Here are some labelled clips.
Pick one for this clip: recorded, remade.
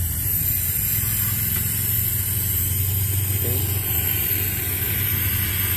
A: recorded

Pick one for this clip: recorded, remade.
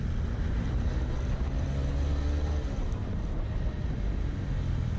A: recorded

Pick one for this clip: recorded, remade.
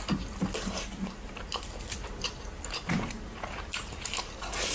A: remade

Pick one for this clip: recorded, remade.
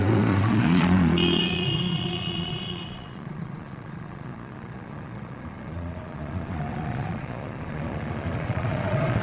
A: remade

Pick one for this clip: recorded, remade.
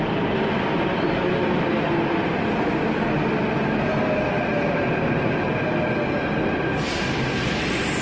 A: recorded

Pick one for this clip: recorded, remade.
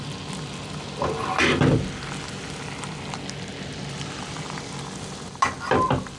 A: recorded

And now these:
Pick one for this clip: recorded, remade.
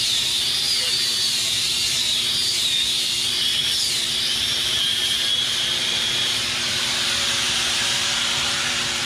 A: remade